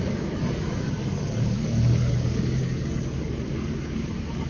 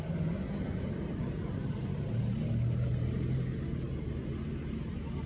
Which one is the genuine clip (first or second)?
second